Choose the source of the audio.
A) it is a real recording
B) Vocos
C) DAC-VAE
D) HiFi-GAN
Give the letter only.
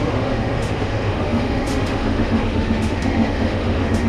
C